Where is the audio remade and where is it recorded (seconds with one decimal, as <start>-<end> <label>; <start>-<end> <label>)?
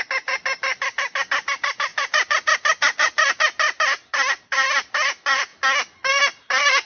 0.0-5.5 remade; 5.5-6.1 recorded; 6.1-6.8 remade